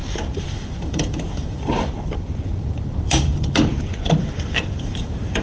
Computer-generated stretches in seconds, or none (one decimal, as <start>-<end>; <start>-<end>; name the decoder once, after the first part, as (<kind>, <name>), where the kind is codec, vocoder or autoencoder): 0.0-5.4 (vocoder, BigVGAN v2)